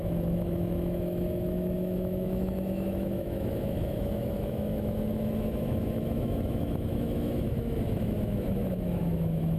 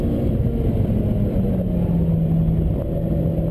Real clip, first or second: second